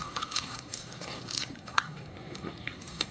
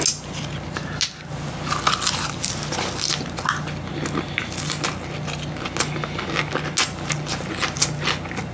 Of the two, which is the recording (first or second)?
second